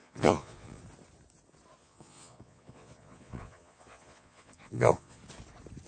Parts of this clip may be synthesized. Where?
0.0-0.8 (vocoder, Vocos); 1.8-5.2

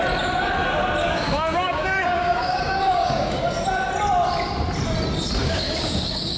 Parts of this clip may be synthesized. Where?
1.0-3.4 (codec, DAC); 5.4-6.4